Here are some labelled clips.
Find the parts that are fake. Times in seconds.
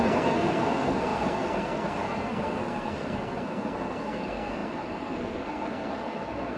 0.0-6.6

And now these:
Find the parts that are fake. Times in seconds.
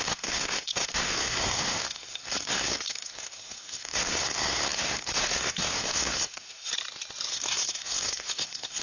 0.0-6.7; 7.3-8.8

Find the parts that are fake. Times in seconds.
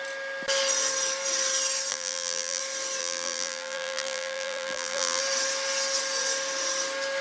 1.9-2.6; 3.0-5.2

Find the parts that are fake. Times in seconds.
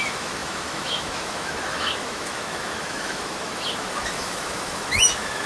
0.0-5.5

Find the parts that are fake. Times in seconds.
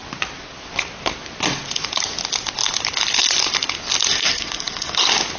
4.1-5.0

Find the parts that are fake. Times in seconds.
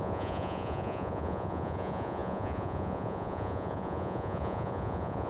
0.0-5.3